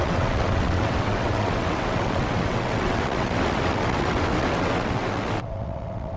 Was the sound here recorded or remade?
remade